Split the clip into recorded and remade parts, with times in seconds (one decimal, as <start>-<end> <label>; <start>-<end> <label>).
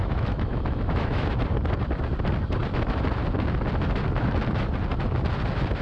0.0-1.3 remade; 1.3-5.8 recorded